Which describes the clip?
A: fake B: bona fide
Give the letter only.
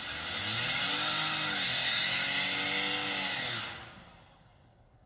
B